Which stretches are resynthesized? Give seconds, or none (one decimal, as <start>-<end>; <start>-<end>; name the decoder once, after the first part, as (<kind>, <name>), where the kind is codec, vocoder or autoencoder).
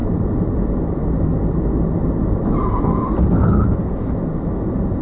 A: 0.0-1.3 (vocoder, BigVGAN v2); 2.6-3.8